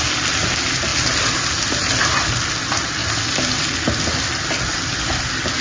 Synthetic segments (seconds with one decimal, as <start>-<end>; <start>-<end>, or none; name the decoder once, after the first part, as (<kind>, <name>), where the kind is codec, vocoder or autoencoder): none